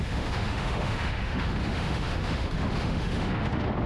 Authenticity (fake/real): fake